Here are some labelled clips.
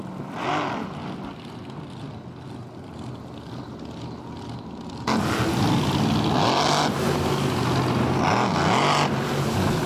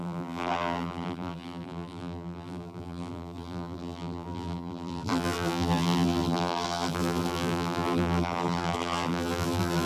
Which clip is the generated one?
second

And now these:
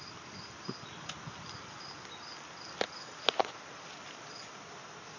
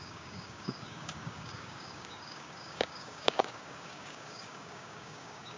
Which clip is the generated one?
second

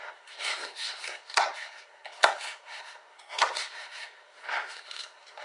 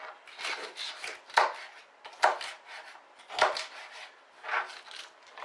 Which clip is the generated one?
first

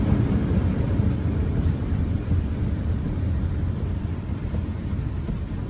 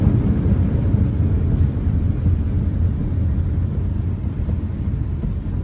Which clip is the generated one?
first